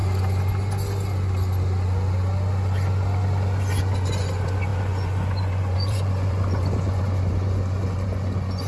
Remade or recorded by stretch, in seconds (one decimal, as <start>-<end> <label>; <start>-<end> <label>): 0.0-3.8 recorded; 3.8-8.7 remade

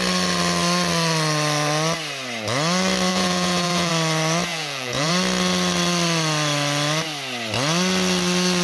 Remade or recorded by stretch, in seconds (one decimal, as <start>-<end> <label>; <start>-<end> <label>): 0.0-3.1 recorded; 3.1-3.9 remade; 3.9-4.5 recorded; 4.5-5.1 remade; 5.1-8.6 recorded

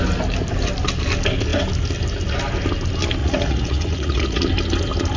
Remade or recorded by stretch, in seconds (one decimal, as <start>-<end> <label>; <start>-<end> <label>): 0.0-3.2 recorded; 3.2-4.4 remade; 4.4-5.2 recorded